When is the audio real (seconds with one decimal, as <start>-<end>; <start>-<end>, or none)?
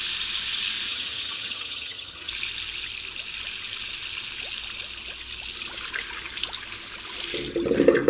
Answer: 0.0-0.9; 2.3-8.1